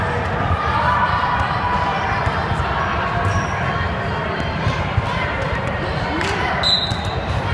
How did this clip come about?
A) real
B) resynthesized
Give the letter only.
A